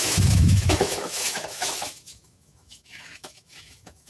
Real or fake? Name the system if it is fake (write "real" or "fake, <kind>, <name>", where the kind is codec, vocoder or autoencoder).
fake, autoencoder, DAC-VAE